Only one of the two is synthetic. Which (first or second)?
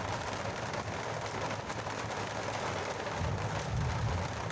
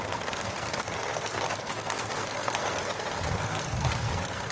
second